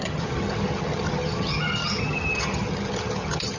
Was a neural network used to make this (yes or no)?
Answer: yes